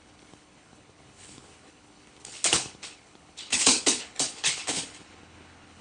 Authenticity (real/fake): fake